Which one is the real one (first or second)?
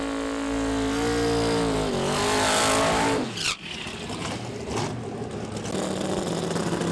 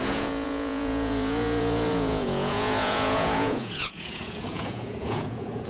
first